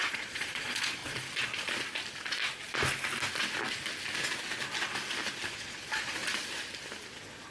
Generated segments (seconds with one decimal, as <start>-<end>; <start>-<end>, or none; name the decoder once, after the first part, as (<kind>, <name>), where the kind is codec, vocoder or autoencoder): 0.0-1.0 (vocoder, Vocos); 5.5-6.2; 7.1-7.5